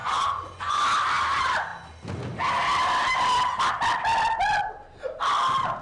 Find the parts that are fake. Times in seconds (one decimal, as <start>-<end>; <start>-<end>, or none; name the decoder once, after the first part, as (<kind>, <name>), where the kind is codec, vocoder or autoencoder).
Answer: 0.0-0.8 (vocoder, Vocos)